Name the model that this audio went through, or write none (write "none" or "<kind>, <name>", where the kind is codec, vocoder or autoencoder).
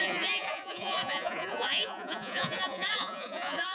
vocoder, Vocos